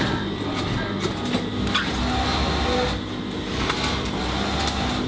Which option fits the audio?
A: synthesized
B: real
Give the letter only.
B